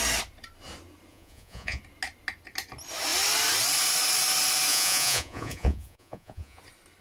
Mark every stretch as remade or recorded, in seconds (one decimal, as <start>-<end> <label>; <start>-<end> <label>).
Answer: 0.0-1.1 recorded; 1.1-1.8 remade; 1.8-4.7 recorded; 4.7-6.6 remade; 6.6-7.0 recorded